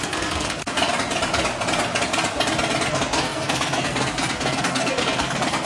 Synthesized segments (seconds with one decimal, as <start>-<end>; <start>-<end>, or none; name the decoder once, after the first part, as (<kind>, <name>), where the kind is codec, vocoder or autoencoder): 0.0-0.6 (codec, SNAC); 2.9-5.7